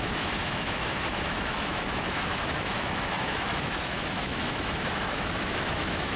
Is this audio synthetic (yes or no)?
yes